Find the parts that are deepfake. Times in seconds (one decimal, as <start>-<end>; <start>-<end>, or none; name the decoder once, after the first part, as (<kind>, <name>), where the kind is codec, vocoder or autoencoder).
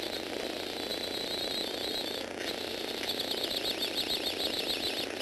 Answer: none